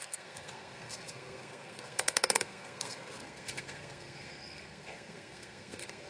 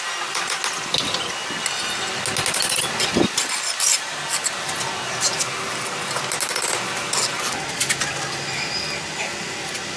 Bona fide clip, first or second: second